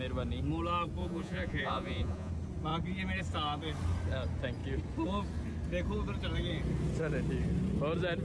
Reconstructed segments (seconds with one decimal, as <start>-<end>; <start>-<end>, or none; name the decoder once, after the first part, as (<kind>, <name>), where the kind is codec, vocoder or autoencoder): 1.0-2.3 (vocoder, Vocos)